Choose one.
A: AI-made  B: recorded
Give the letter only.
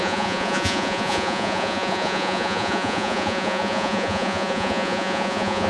A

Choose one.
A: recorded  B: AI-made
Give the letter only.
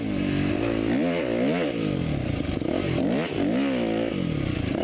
A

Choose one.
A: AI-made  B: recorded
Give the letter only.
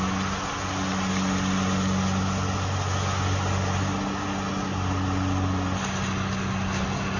B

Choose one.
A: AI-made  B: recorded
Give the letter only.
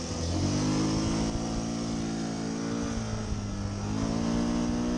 B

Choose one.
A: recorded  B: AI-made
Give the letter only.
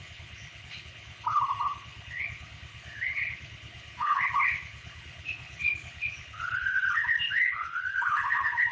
B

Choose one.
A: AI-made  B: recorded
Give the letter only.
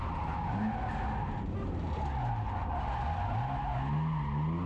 B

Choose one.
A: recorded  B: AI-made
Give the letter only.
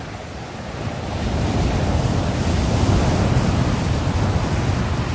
A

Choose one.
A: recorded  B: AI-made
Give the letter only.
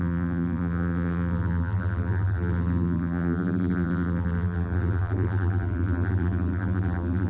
B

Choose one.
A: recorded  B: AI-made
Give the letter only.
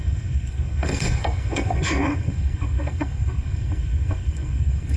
B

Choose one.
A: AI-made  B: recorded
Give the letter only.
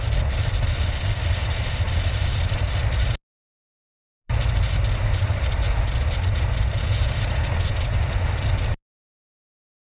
B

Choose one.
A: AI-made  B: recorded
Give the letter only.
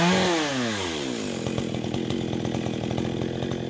B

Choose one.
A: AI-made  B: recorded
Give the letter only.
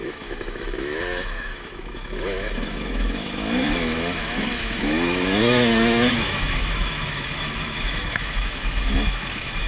A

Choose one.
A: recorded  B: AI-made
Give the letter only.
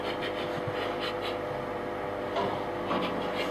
A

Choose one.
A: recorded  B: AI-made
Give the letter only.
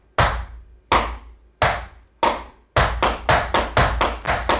A